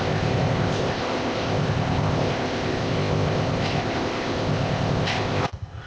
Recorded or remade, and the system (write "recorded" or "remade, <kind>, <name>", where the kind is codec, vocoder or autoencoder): remade, codec, ZipCodec